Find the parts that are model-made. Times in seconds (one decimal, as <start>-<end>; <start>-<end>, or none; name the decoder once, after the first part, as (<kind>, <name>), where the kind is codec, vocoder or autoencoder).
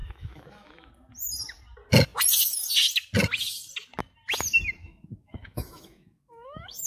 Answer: 0.0-0.9 (autoencoder, DAC-VAE); 4.8-6.9